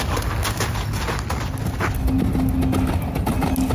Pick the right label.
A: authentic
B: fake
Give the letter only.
A